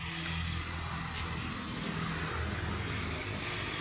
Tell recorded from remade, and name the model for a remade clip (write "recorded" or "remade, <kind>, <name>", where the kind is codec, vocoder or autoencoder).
recorded